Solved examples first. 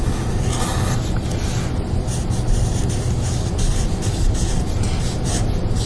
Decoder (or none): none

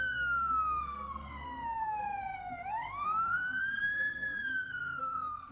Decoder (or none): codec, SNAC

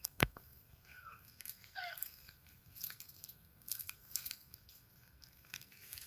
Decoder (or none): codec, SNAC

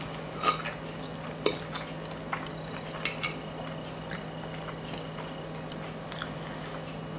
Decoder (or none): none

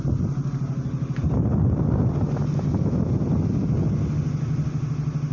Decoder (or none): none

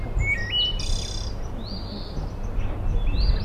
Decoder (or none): none